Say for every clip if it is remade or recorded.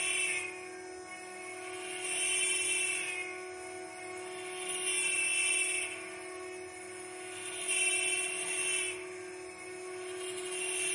recorded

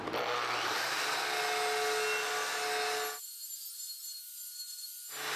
recorded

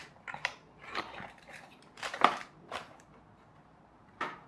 remade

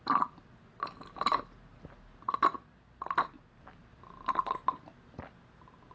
recorded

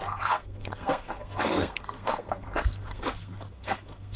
remade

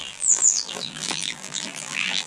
remade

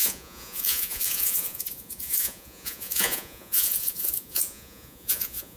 remade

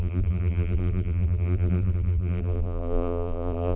remade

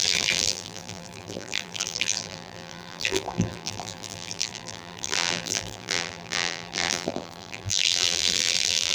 remade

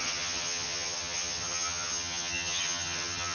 remade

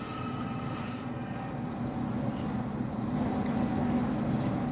recorded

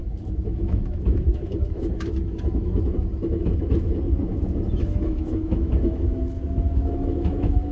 remade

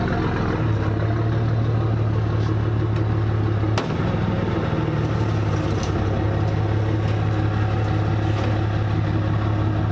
recorded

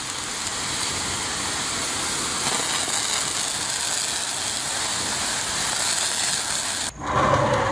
recorded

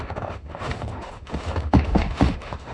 remade